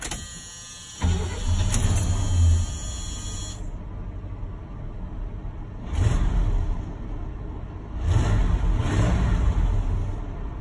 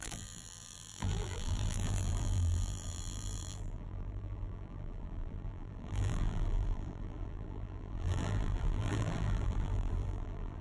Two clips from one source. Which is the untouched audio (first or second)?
first